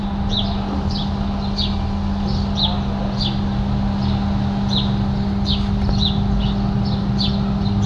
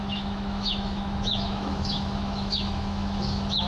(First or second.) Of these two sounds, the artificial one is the second